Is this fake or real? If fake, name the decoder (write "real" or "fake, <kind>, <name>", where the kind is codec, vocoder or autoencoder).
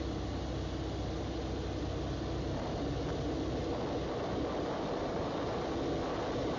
real